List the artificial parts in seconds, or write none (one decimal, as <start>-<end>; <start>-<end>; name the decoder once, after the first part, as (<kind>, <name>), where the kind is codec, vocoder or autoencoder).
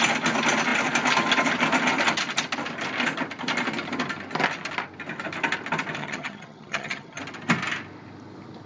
6.0-7.2 (vocoder, HiFi-GAN)